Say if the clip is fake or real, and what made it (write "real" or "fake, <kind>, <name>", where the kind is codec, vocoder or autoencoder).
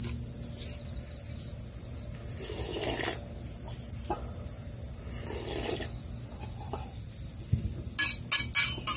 real